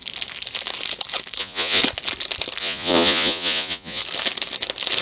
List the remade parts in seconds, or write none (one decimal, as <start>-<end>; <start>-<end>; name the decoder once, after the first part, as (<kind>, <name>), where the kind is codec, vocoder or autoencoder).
1.4-1.8 (vocoder, Vocos); 2.6-4.0